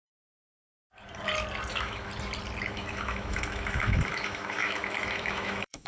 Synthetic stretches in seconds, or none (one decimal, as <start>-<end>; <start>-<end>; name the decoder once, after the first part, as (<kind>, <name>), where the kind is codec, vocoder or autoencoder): 0.0-0.6 (autoencoder, DAC-VAE); 1.7-2.1; 2.7-5.9